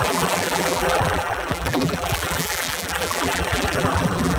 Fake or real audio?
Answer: fake